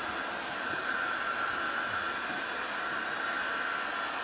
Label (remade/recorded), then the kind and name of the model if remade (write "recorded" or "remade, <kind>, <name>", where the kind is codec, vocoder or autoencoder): recorded